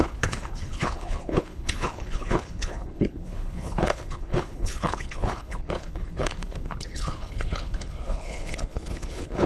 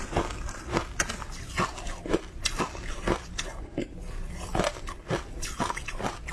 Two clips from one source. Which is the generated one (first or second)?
first